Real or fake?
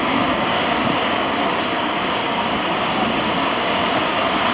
fake